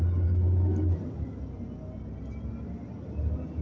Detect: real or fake real